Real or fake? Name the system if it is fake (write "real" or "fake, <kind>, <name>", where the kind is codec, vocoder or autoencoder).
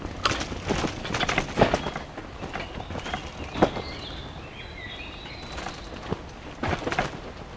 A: real